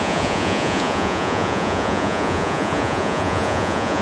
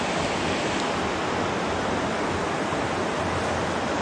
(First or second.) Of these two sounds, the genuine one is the second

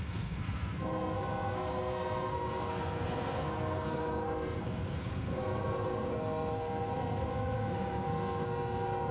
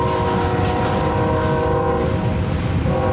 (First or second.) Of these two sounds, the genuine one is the second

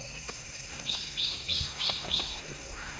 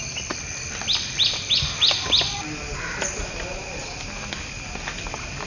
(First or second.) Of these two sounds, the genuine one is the second